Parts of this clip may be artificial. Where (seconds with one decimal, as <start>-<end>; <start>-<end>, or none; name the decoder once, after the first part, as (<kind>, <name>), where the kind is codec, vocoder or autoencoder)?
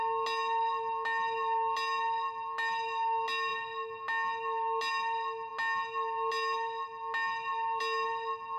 none